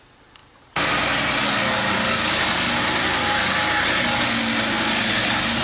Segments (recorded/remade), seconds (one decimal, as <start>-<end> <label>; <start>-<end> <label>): 0.0-5.6 recorded